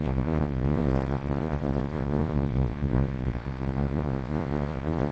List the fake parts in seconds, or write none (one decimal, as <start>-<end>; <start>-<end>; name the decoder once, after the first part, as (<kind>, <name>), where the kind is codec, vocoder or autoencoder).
0.0-5.1 (vocoder, Vocos)